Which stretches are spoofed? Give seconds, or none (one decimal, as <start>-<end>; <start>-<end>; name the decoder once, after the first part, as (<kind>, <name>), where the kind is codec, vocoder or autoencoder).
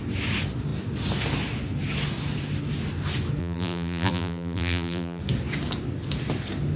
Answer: 3.4-5.2 (vocoder, BigVGAN v2)